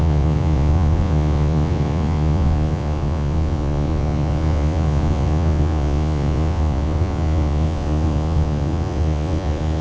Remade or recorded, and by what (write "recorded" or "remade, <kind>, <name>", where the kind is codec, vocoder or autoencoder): remade, vocoder, Vocos